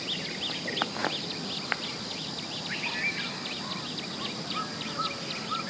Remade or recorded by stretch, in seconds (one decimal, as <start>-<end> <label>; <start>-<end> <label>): 0.0-5.7 recorded